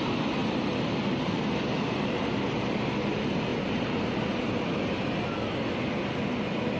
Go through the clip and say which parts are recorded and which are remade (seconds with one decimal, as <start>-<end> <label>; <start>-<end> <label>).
0.0-0.4 recorded; 0.4-2.6 remade; 2.6-3.5 recorded; 3.5-5.1 remade; 5.1-6.8 recorded